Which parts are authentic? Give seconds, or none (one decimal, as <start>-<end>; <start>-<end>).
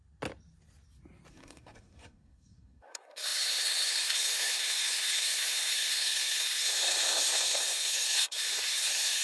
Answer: 0.0-1.3